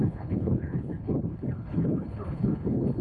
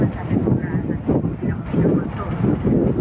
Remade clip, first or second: first